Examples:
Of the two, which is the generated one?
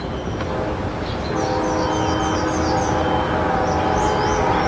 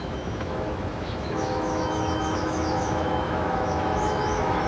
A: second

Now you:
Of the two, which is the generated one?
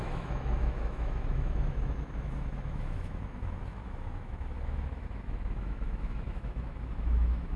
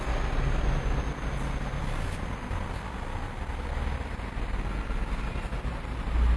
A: first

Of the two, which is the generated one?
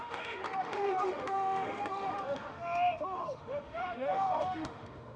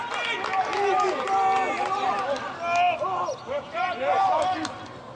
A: first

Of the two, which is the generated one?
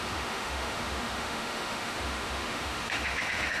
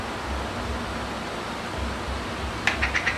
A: first